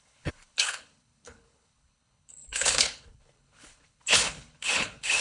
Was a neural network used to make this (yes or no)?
yes